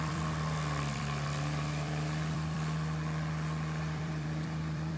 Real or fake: fake